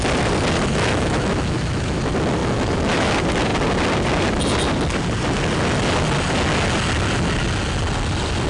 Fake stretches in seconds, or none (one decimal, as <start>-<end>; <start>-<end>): 0.7-2.0; 2.4-3.1